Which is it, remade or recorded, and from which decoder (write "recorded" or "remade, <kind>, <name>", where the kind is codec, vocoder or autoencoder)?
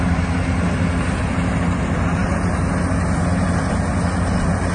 recorded